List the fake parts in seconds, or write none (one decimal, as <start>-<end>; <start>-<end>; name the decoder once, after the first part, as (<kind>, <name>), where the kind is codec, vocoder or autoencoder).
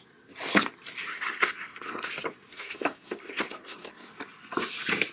1.1-2.1 (codec, SNAC); 2.5-4.1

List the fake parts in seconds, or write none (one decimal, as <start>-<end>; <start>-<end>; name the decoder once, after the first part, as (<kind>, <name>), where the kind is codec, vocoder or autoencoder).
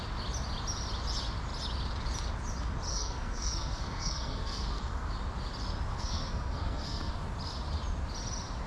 2.9-5.1 (codec, SNAC); 5.9-7.1